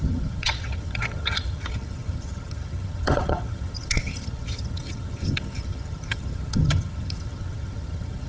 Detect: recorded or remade remade